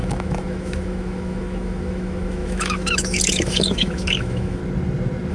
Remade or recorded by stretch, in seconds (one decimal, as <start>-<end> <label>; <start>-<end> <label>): 0.0-4.6 remade; 4.6-5.3 recorded